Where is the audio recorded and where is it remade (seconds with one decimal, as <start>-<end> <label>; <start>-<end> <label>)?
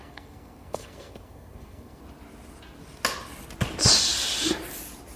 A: 0.0-2.0 remade; 2.0-5.2 recorded